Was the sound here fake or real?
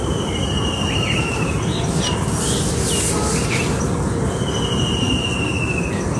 real